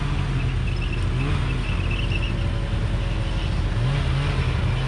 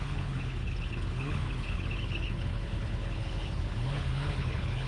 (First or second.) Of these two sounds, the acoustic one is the first